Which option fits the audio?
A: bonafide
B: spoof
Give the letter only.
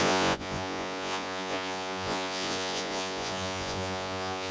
B